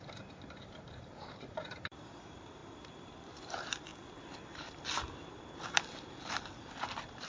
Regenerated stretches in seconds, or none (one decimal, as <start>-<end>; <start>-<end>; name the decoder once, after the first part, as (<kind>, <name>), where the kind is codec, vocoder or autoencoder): 0.0-3.9 (vocoder, BigVGAN v2)